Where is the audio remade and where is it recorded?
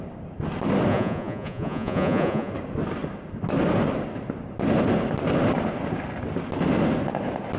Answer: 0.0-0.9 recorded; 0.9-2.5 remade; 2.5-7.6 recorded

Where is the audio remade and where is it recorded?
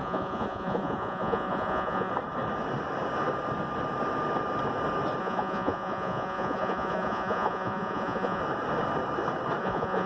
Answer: 0.0-2.1 remade; 2.1-5.2 recorded; 5.2-8.4 remade; 8.4-9.6 recorded; 9.6-10.1 remade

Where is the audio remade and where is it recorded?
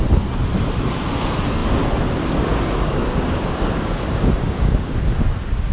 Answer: 0.0-2.5 recorded; 2.5-5.0 remade; 5.0-5.7 recorded